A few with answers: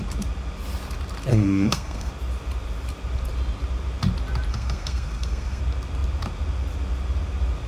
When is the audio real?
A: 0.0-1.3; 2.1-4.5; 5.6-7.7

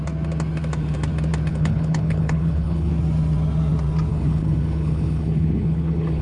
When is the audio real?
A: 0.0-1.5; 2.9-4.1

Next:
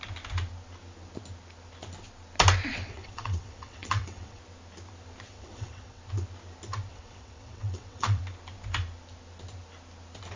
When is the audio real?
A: 0.0-2.7; 4.4-5.3; 6.0-6.9; 8.2-10.4

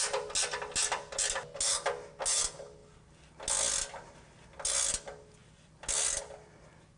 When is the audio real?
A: 0.0-7.0

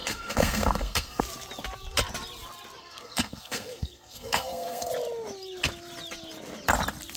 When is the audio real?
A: 1.2-2.8; 4.9-7.2

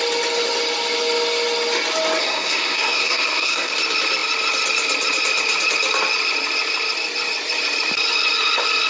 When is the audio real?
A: 0.0-2.2; 3.7-8.9

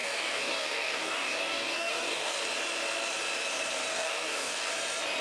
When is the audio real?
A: 2.4-3.9; 4.7-5.2

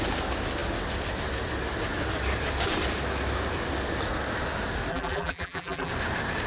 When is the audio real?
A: 0.0-4.9; 5.9-6.5